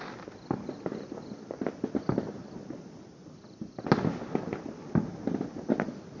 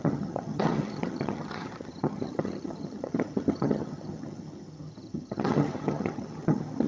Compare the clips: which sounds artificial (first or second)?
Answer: second